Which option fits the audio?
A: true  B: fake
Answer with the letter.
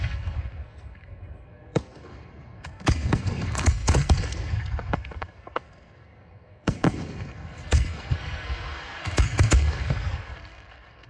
B